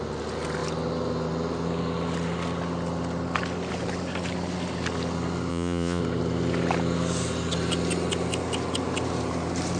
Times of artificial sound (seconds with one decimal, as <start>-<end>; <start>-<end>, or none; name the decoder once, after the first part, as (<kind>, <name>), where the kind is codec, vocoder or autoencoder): 5.5-6.0 (vocoder, Vocos)